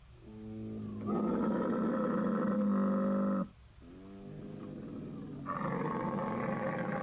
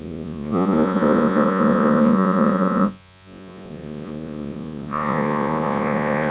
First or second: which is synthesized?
second